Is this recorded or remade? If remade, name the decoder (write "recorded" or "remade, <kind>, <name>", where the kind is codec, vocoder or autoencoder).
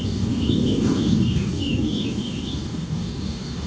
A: remade, codec, DAC